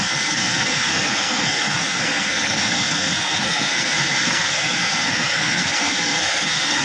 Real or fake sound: fake